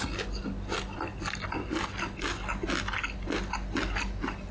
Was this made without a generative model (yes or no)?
yes